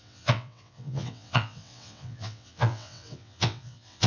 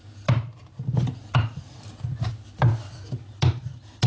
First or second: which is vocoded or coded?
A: first